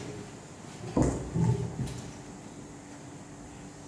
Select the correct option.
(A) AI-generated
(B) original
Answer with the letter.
B